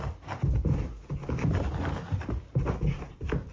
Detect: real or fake real